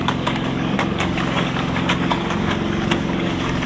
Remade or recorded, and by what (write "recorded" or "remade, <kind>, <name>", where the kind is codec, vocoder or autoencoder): remade, codec, DAC